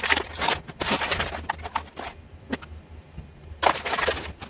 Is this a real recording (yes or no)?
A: yes